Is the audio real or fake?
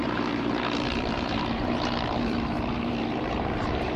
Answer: fake